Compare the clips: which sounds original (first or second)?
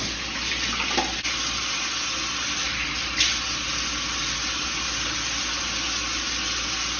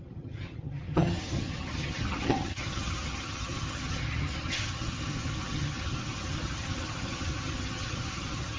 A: first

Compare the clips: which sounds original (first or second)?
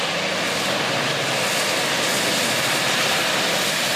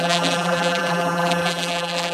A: first